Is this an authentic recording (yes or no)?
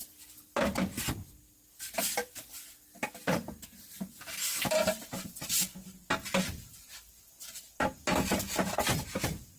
yes